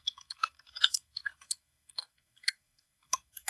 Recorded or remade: remade